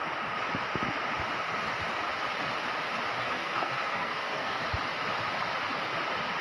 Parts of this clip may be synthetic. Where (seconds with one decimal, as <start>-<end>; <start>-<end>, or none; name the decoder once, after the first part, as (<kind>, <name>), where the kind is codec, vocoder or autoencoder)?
3.2-4.6 (codec, SNAC)